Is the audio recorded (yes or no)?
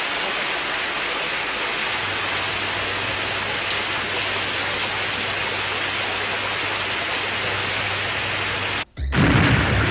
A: yes